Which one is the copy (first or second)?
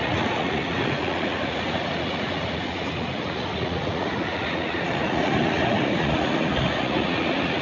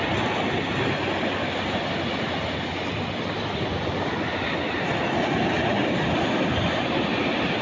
first